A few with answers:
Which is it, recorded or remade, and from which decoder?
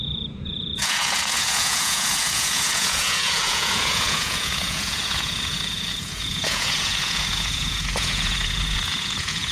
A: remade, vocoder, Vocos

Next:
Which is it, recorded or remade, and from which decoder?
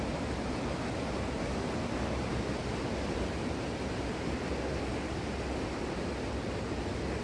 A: recorded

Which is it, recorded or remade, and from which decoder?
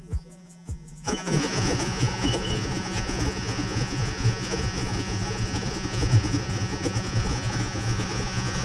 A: remade, vocoder, Vocos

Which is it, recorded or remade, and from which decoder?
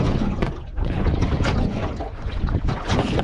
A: remade, vocoder, Vocos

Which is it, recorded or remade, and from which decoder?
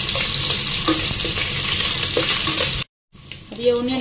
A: recorded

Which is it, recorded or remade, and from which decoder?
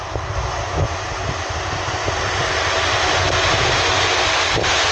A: recorded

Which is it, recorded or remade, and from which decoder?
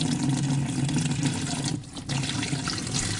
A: recorded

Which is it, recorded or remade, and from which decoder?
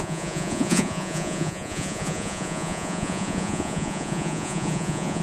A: remade, vocoder, Vocos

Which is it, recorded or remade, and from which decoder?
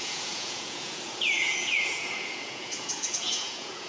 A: remade, vocoder, Vocos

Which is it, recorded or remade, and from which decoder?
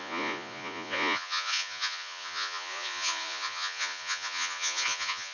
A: remade, vocoder, Vocos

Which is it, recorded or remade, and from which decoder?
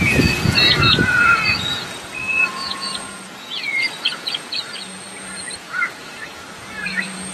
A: remade, vocoder, Vocos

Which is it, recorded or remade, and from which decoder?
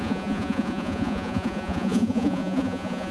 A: remade, vocoder, Vocos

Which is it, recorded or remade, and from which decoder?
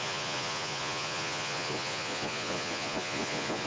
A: remade, vocoder, Vocos